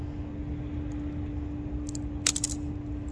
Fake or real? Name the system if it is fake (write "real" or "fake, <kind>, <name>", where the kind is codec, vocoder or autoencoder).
real